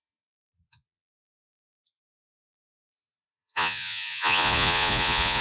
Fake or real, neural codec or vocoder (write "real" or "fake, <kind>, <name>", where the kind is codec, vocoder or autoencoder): fake, vocoder, Vocos